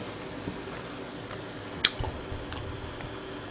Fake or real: real